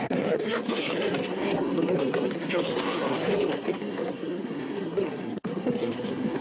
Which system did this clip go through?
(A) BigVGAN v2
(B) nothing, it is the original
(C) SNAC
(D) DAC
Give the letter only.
C